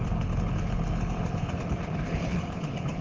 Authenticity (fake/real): fake